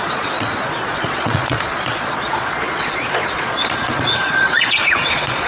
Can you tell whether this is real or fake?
fake